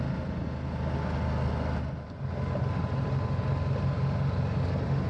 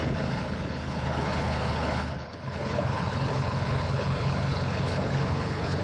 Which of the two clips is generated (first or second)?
second